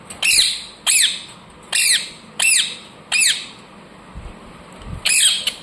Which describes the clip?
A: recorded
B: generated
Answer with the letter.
A